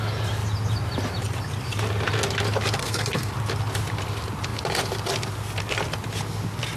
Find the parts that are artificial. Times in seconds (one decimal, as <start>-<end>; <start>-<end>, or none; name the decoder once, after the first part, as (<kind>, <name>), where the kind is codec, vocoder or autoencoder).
2.8-3.3 (codec, SNAC)